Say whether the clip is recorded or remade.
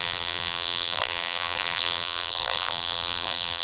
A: remade